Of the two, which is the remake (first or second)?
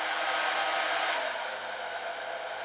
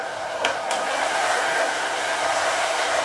second